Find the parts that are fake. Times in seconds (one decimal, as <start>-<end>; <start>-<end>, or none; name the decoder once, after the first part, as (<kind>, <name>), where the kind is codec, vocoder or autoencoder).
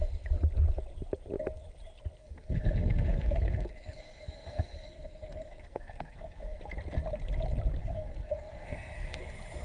2.2-6.6 (codec, SNAC); 7.8-9.2